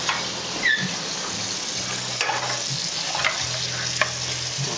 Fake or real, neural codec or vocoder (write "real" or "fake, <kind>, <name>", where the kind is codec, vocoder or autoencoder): real